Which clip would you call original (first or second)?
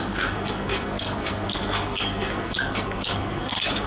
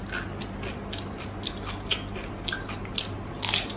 second